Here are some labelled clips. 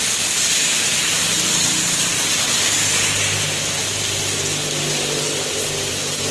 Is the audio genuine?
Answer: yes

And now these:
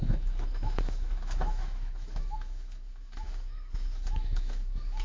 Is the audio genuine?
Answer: no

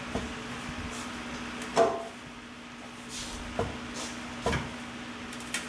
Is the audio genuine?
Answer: yes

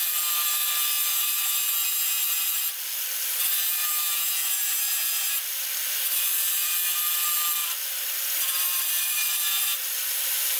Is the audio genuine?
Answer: yes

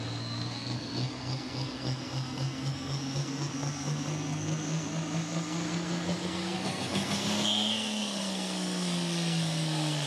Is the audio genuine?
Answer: no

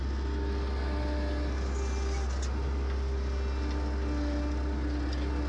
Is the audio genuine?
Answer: yes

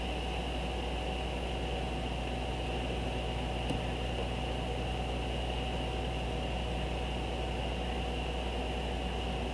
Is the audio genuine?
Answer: yes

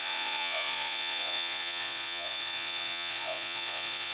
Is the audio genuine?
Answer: no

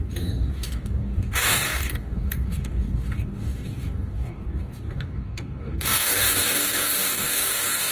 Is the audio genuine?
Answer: no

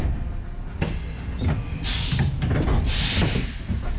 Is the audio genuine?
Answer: yes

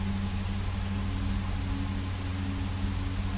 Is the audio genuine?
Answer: yes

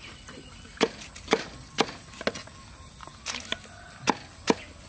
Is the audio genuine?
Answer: yes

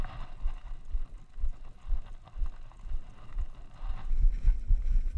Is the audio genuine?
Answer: yes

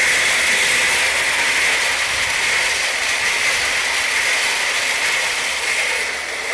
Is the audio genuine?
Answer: yes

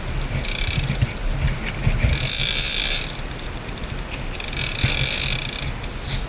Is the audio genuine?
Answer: yes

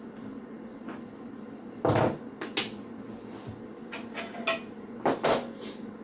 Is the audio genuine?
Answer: yes